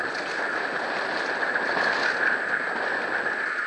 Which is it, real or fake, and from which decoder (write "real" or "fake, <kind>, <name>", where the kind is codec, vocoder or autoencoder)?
real